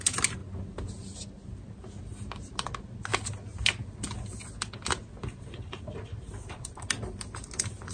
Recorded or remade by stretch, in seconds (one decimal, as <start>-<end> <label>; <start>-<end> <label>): 0.0-7.9 recorded